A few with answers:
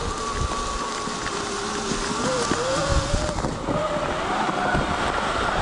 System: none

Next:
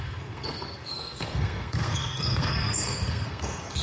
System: codec, SNAC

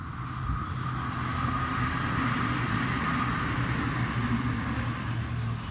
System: none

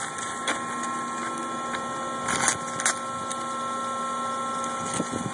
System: none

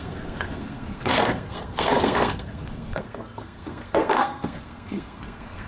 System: codec, SNAC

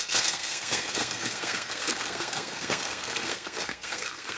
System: codec, SNAC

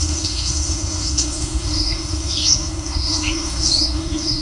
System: codec, SNAC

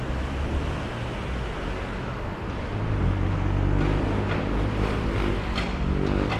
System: none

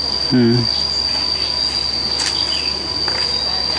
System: none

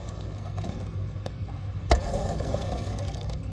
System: codec, SNAC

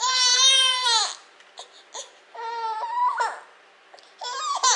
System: none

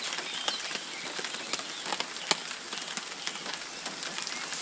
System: none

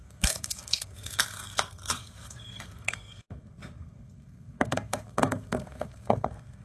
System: codec, SNAC